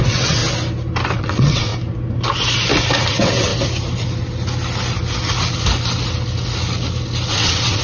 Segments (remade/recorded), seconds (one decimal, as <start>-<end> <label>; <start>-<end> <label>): 0.0-0.4 remade; 0.4-1.2 recorded; 1.2-1.7 remade; 1.7-3.1 recorded; 3.1-3.5 remade; 3.5-7.3 recorded; 7.3-7.8 remade